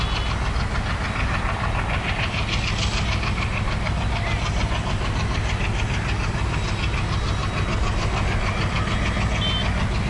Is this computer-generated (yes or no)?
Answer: no